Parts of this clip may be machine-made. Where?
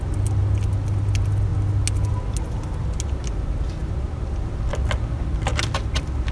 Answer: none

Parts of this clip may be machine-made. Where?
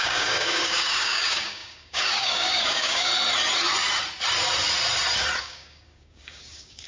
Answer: 0.0-3.1 (codec, DAC); 5.4-6.9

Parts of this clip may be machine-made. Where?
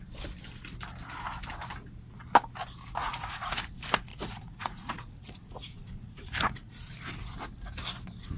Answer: 3.0-3.5 (vocoder, Vocos); 4.1-6.9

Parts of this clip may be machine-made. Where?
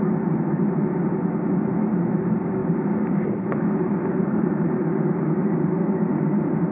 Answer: 2.6-5.8 (vocoder, BigVGAN v2)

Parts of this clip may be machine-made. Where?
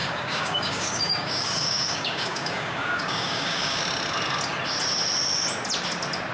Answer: 0.0-3.8 (codec, DAC)